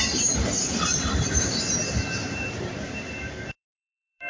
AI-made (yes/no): yes